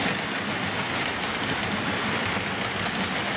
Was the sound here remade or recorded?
recorded